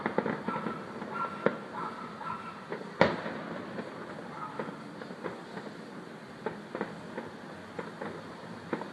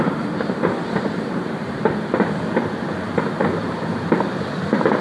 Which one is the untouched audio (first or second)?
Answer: first